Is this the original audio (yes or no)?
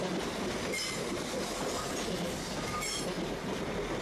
yes